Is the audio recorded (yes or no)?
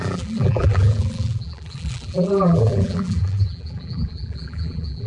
no